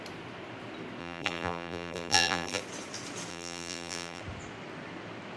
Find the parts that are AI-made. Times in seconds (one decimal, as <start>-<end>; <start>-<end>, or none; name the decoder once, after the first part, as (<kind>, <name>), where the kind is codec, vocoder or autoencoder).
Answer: 1.0-2.6 (vocoder, BigVGAN v2); 3.3-4.2